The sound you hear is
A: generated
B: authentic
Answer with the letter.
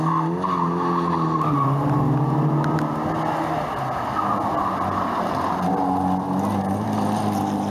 B